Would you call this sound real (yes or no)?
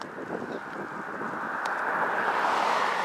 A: yes